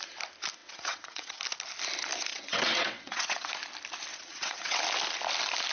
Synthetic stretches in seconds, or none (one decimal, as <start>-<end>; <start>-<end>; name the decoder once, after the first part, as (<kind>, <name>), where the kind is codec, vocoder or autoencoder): 0.6-1.4 (vocoder, WaveNeXt); 2.3-3.5; 4.1-4.8